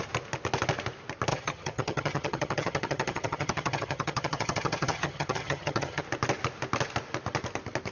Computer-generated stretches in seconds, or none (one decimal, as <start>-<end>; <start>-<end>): 1.3-6.0